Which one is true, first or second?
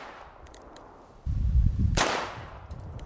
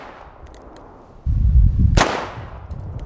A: second